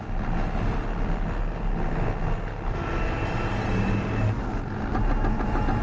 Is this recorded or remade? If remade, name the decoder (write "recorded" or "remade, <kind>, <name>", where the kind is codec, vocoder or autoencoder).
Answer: recorded